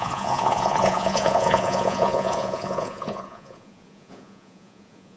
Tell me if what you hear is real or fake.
fake